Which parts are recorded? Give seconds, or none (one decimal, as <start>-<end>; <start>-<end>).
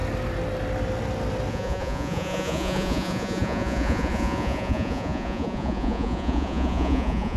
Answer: 0.0-1.5